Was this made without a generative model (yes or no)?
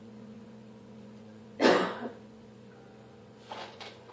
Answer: no